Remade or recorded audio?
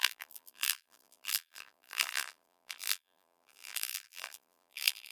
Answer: remade